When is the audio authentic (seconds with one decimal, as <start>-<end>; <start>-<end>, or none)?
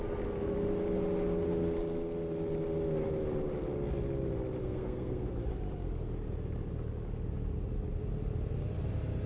0.0-4.6; 5.3-9.3